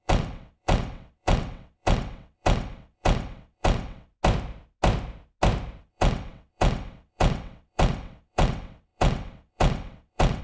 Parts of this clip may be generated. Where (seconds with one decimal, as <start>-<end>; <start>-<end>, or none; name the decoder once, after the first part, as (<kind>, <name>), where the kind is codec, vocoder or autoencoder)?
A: 0.0-4.1 (vocoder, WaveNeXt); 5.8-10.4